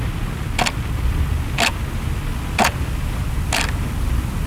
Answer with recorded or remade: recorded